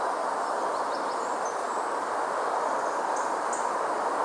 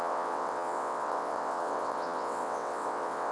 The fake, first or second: second